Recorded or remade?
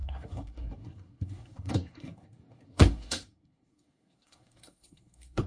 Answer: remade